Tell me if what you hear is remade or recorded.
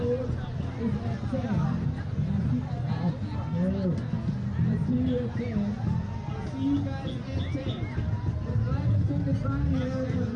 recorded